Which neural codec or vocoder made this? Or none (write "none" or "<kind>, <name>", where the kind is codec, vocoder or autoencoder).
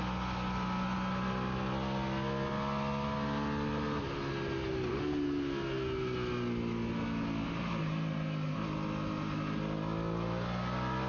none